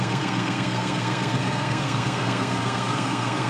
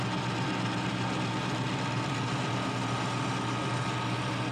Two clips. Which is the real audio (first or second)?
second